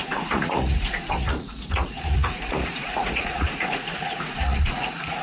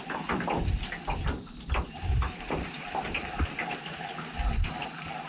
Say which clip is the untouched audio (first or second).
second